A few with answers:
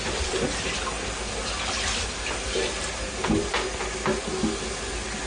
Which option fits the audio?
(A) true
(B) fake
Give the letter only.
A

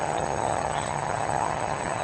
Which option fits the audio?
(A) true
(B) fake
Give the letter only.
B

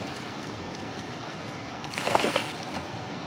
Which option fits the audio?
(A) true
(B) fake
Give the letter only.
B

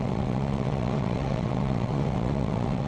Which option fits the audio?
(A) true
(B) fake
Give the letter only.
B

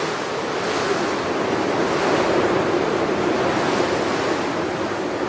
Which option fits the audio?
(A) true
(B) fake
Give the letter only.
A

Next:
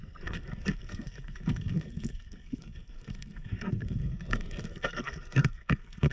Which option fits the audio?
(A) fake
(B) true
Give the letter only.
A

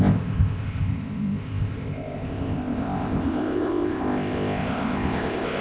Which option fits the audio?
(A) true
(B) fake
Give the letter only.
B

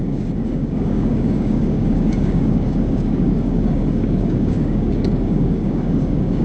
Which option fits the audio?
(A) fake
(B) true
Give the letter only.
A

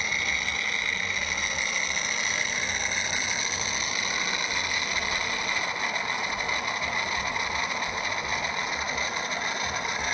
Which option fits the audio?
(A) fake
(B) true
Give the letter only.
B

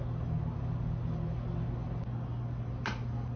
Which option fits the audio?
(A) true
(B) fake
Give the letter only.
A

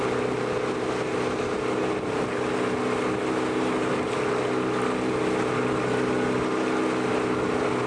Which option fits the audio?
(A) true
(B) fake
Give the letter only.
A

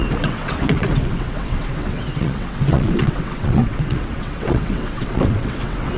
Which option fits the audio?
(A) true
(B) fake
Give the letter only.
B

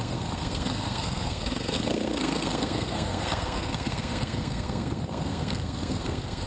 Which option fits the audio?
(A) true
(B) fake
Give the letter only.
B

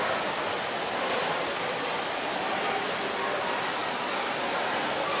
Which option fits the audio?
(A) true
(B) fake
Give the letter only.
A